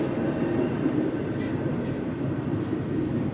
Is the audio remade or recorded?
recorded